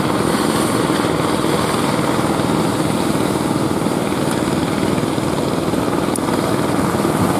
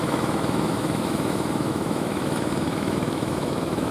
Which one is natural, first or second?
first